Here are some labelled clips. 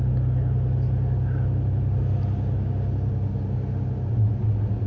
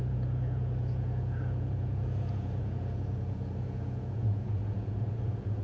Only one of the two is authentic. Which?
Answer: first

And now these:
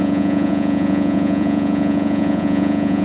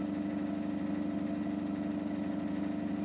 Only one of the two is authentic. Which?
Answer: second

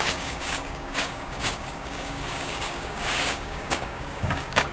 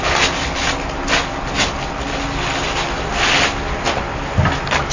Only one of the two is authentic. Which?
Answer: second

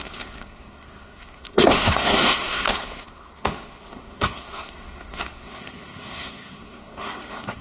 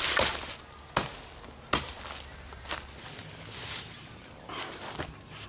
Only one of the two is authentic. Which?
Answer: second